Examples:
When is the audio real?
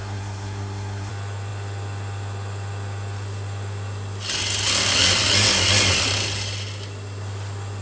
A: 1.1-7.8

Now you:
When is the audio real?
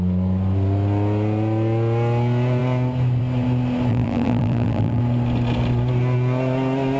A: 0.0-3.9; 5.0-7.0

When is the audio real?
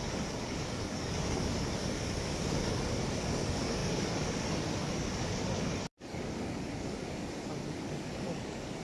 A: none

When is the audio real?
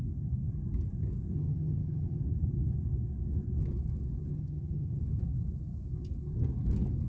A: 0.0-1.3; 2.2-4.3; 5.0-7.1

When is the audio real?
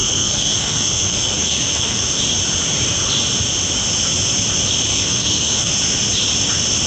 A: 2.2-4.9; 5.7-6.9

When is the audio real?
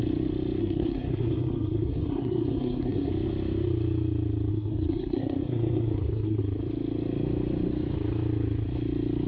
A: 0.0-0.6; 3.1-4.5; 6.4-9.3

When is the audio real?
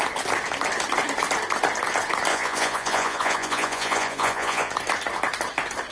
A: 0.0-2.3; 4.7-5.9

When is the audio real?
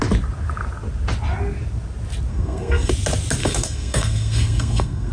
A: 0.0-2.3; 2.9-3.4